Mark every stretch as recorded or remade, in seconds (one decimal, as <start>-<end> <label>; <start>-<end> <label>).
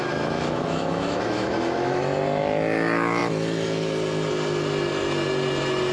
0.0-2.0 remade; 2.0-5.9 recorded